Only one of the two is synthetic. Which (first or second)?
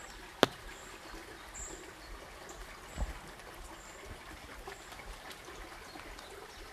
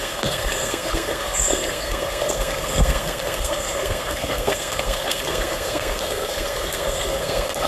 second